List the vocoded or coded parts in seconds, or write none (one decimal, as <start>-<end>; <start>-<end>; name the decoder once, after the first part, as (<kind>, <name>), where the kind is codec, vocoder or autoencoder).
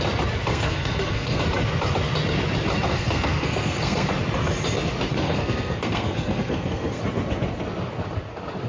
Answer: 0.5-1.4 (codec, SNAC); 2.9-4.1; 5.1-7.0